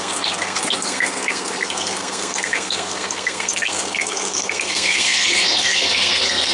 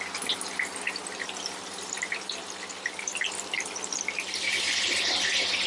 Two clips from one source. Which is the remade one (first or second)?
first